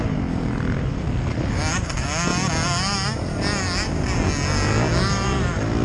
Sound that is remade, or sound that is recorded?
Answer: recorded